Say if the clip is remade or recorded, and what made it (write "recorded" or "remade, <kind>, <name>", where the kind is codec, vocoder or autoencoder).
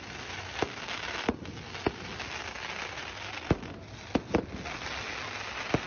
recorded